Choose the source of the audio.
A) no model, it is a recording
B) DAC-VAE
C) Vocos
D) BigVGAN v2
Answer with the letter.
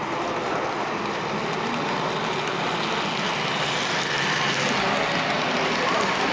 A